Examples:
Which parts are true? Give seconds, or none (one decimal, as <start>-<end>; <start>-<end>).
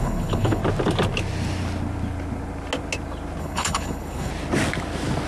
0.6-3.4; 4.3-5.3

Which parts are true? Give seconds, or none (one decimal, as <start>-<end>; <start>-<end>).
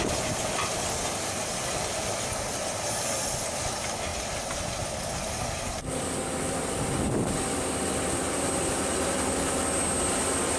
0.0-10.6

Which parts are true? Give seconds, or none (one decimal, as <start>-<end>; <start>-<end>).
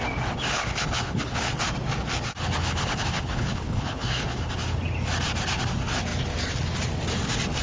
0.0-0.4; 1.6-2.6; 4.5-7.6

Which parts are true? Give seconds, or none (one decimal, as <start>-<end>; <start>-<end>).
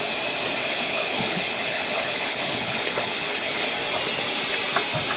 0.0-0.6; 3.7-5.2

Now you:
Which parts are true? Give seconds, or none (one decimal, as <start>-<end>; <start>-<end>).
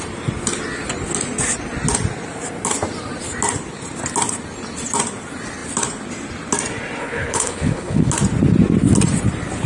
0.0-7.0; 8.1-9.7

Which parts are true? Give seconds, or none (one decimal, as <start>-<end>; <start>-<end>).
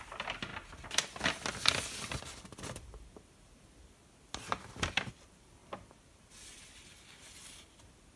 0.0-8.2